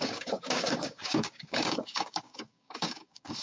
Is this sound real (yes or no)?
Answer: no